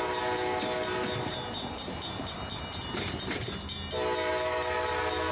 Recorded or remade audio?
recorded